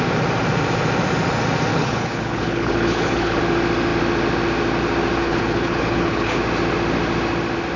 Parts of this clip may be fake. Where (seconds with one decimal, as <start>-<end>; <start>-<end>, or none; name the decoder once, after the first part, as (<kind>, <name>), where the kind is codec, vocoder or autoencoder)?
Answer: 1.7-3.4 (codec, HILCodec); 5.2-6.4